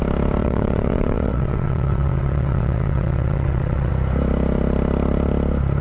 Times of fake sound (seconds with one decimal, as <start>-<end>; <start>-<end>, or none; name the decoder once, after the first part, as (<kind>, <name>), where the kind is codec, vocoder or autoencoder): 0.4-3.9 (vocoder, WaveNeXt)